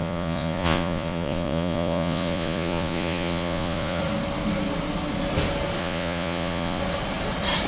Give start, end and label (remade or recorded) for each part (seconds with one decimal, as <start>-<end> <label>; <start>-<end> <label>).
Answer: 0.0-4.0 remade; 4.0-5.8 recorded; 5.8-6.8 remade; 6.8-7.7 recorded